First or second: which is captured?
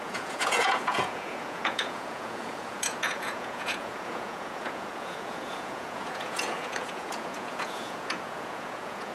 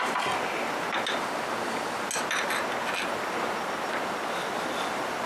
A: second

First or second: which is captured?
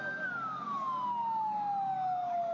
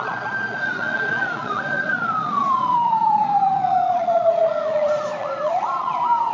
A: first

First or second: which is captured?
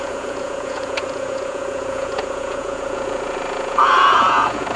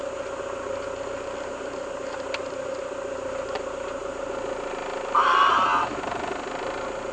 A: second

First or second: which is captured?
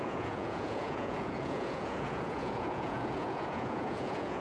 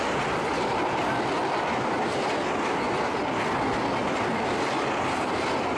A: second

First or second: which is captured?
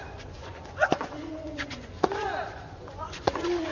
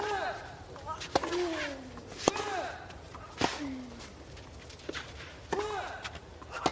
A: second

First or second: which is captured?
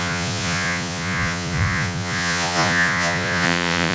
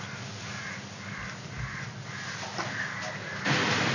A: second